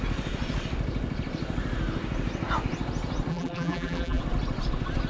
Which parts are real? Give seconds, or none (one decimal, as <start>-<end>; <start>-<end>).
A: 0.0-3.3; 4.2-5.1